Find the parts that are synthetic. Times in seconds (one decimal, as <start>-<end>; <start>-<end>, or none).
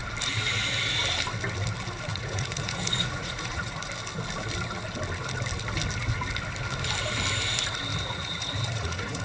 2.1-3.9; 7.9-9.2